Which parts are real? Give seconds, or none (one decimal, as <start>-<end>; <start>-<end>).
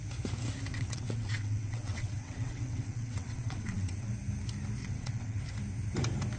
0.0-0.7; 4.1-4.8; 5.4-6.4